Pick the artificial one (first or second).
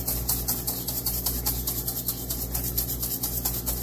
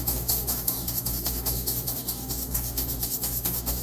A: second